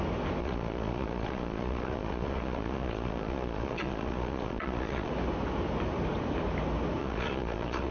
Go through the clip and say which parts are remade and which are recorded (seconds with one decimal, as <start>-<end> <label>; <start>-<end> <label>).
0.0-0.4 recorded; 0.4-5.1 remade; 5.1-7.0 recorded; 7.0-7.9 remade